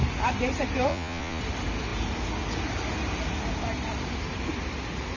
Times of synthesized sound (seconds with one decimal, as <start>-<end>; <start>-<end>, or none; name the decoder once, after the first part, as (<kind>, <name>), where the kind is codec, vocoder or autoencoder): 0.9-1.4 (vocoder, Vocos)